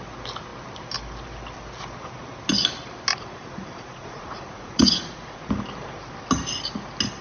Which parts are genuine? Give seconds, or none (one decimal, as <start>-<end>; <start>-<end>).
0.0-3.1; 5.5-7.2